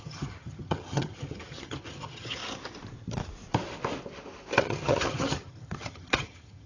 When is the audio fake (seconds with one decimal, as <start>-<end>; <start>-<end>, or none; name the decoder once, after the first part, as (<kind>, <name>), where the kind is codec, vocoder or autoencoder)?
0.0-2.4 (vocoder, HiFi-GAN); 4.6-6.7